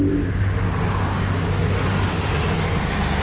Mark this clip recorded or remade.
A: recorded